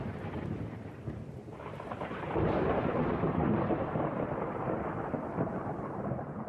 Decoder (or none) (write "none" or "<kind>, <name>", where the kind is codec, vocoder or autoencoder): vocoder, BigVGAN v2